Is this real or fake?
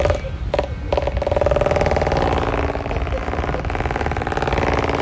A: real